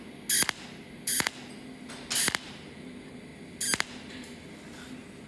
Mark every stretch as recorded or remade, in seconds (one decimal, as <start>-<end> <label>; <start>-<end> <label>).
0.0-5.3 recorded